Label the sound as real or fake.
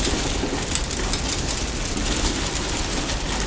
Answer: real